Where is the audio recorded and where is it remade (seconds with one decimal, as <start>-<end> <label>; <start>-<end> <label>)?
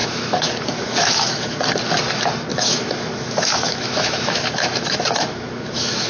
0.0-1.6 remade; 1.6-2.5 recorded; 2.5-6.1 remade